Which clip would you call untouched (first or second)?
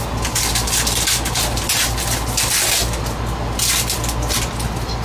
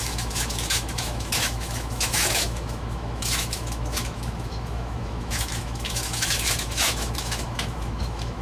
first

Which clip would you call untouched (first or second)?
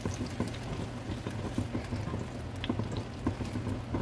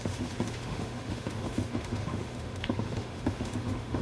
first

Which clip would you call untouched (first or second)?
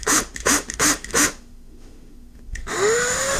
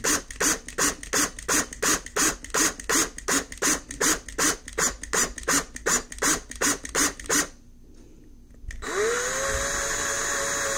second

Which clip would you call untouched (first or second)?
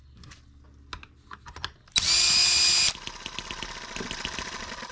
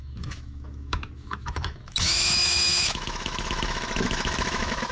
first